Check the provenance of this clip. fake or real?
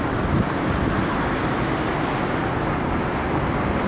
real